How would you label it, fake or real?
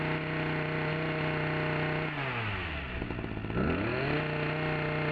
real